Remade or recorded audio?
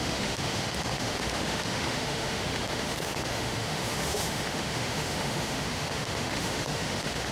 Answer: remade